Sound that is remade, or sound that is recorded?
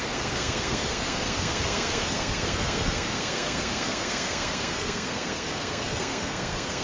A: remade